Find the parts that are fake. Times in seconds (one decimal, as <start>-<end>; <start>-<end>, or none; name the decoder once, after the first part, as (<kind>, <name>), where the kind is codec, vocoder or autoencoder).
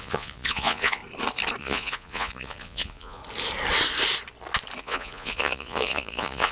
0.0-1.0 (vocoder, Vocos); 1.6-3.2; 4.8-6.5